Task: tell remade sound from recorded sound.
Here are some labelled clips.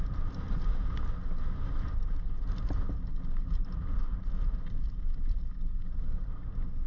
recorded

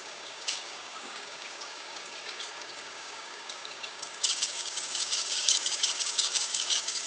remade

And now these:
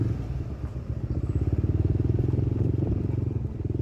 recorded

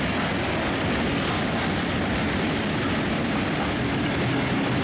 recorded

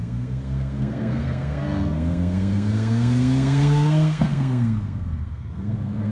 remade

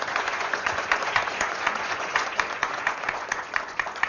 remade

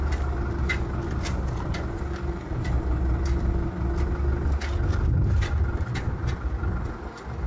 recorded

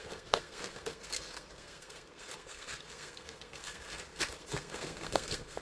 remade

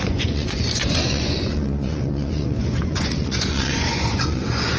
remade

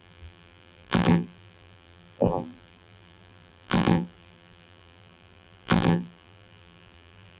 remade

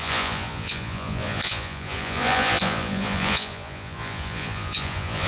remade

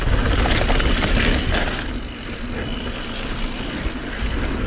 recorded